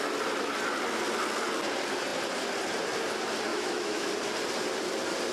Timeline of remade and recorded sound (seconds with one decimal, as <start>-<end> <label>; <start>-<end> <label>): 0.0-3.5 recorded; 3.5-4.1 remade; 4.1-5.3 recorded